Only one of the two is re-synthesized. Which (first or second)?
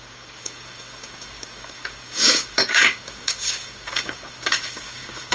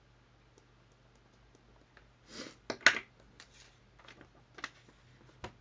first